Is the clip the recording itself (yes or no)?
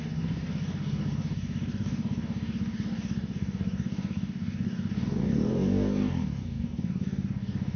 no